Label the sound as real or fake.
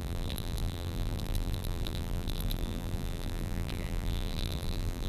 fake